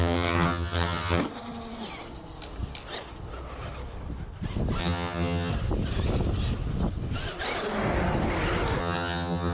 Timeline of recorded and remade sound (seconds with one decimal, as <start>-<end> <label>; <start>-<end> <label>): 0.0-1.2 remade; 1.2-4.8 recorded; 4.8-5.5 remade; 5.5-8.8 recorded; 8.8-9.5 remade